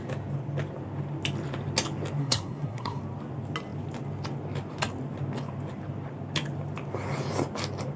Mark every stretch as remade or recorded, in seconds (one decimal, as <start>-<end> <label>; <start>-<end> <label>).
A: 0.0-2.2 recorded; 2.2-3.0 remade; 3.0-8.0 recorded